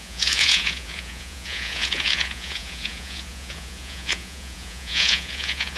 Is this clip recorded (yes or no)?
no